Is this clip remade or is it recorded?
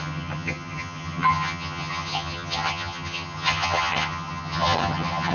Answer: remade